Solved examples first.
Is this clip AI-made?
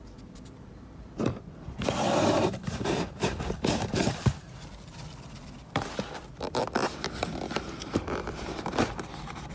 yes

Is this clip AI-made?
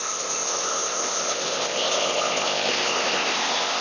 yes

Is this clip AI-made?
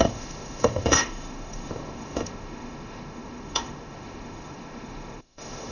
yes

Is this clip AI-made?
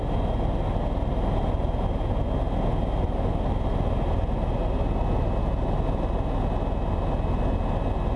no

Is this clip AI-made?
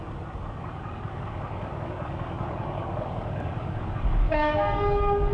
yes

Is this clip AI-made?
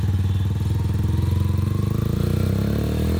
no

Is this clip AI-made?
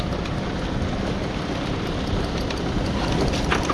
no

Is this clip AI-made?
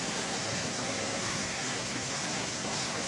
yes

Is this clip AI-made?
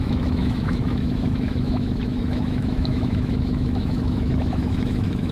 yes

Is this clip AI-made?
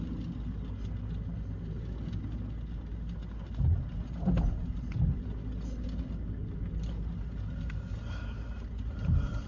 no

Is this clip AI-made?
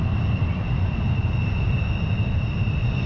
no